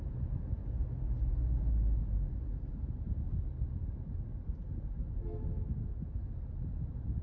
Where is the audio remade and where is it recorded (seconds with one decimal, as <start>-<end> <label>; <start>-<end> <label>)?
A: 0.0-7.2 recorded